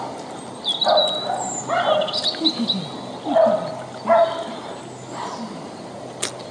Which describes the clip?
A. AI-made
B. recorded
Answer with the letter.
B